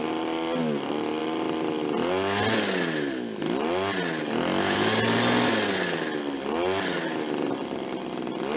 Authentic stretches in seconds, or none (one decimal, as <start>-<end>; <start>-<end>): 0.0-8.6